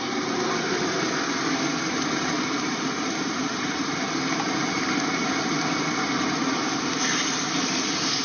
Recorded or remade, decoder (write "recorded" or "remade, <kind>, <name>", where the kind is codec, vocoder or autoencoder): remade, vocoder, BigVGAN v2